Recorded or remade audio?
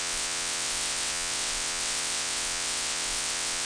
remade